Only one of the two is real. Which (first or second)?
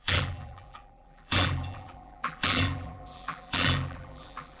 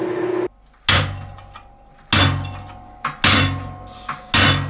second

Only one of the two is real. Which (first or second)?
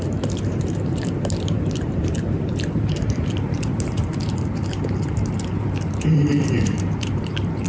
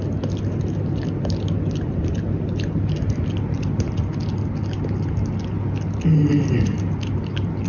second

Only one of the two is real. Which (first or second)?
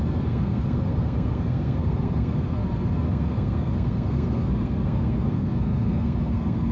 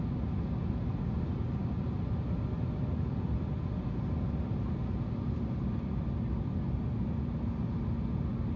second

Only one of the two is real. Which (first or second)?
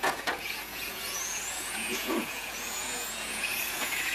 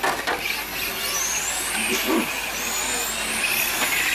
second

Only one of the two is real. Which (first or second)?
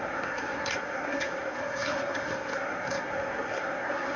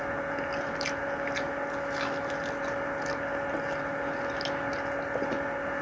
second